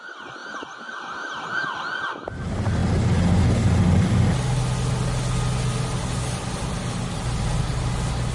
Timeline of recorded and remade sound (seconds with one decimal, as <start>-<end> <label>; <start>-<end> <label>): 0.0-8.3 recorded

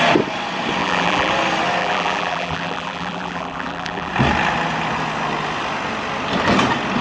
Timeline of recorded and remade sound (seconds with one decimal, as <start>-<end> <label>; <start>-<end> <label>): 0.0-0.8 recorded; 0.8-1.3 remade; 1.3-1.8 recorded; 1.8-4.1 remade; 4.1-7.0 recorded

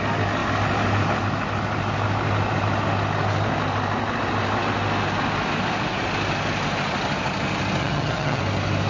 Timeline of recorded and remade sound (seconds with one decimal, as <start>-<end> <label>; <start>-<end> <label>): 0.0-7.8 recorded; 7.8-8.4 remade; 8.4-8.9 recorded

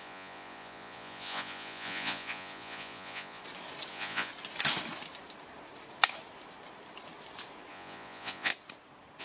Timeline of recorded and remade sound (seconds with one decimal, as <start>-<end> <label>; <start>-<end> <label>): 0.0-3.4 remade; 3.4-3.9 recorded; 3.9-4.3 remade; 4.3-7.7 recorded; 7.7-8.5 remade; 8.5-9.2 recorded

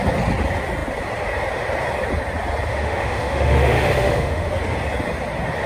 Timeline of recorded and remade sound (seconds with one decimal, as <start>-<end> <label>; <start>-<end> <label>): 0.0-2.7 recorded; 2.7-4.5 remade; 4.5-5.7 recorded